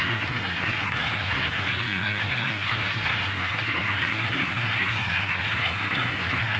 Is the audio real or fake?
fake